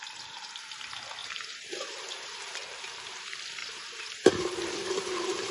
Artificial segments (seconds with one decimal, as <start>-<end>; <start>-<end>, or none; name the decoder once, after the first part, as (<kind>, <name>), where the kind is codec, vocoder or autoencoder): 1.2-2.3 (vocoder, BigVGAN v2); 3.6-4.3